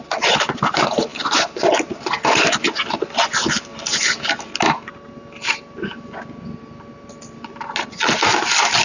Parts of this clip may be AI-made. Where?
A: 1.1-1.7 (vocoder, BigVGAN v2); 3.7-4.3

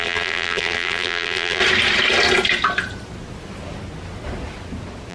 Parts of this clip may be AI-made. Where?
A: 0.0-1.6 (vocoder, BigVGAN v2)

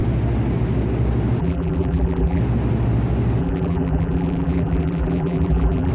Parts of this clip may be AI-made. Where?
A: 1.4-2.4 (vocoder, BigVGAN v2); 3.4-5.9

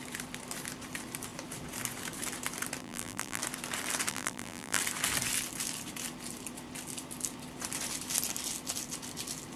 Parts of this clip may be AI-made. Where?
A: 2.8-3.4 (vocoder, BigVGAN v2); 4.1-4.8

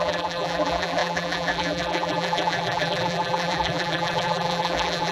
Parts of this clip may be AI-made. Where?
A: 0.0-5.1 (vocoder, BigVGAN v2)

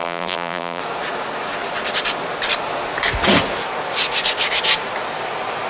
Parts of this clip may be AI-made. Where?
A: 0.0-0.8 (vocoder, BigVGAN v2)

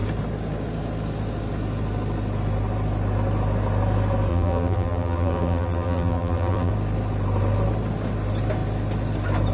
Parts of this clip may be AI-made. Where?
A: 4.3-6.7 (vocoder, BigVGAN v2)